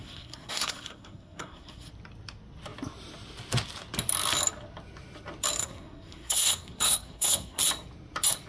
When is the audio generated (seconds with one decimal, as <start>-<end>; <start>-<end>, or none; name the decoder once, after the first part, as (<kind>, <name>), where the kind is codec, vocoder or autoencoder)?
0.0-1.9 (codec, SNAC); 5.6-7.6